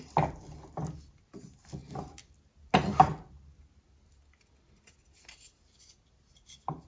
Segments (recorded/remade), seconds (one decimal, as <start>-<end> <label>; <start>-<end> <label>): 0.0-6.9 recorded